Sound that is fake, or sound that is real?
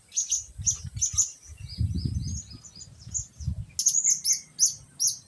real